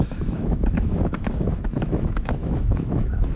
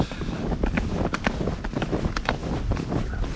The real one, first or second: second